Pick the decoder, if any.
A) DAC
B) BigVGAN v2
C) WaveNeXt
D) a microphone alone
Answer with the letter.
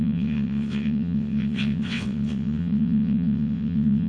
C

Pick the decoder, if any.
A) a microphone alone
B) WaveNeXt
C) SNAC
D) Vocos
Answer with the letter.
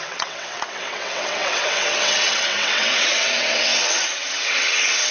B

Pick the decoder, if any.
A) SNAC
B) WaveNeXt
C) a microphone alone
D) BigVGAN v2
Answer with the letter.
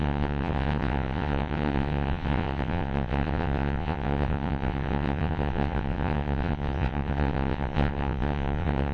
B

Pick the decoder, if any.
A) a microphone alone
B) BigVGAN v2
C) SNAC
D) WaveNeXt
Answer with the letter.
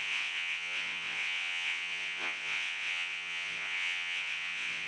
D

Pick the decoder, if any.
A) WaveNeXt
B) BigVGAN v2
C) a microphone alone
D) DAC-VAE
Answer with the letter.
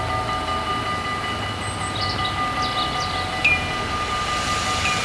C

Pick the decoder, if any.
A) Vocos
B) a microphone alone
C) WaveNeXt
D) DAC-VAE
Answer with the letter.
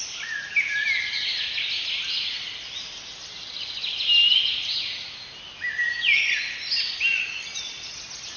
B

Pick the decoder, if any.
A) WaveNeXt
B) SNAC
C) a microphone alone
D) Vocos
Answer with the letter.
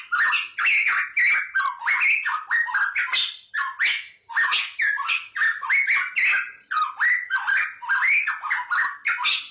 C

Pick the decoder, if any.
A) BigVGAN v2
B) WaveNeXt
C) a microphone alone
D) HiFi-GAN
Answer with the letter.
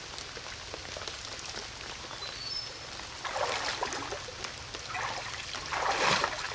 C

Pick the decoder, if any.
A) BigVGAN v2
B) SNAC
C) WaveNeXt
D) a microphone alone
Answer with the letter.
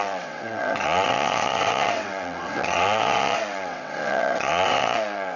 C